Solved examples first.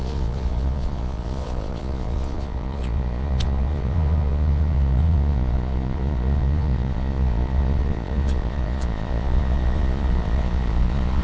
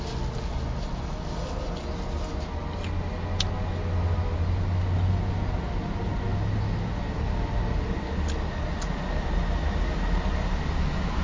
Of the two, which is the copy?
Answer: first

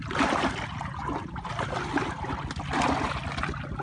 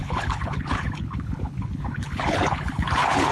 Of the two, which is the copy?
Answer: second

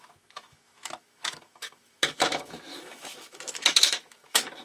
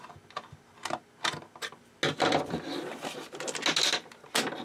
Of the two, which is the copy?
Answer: first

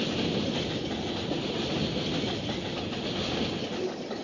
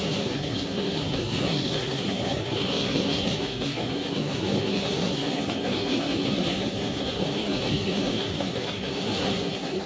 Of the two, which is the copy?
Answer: second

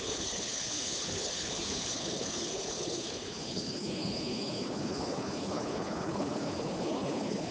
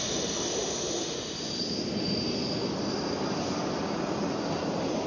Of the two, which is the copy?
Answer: first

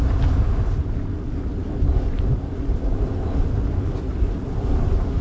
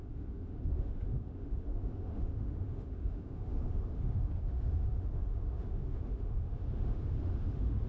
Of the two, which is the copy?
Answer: second